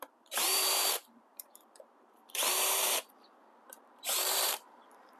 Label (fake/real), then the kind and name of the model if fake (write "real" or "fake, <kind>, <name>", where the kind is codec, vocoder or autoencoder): fake, vocoder, BigVGAN v2